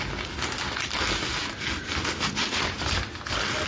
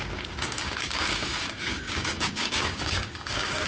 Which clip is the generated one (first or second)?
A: second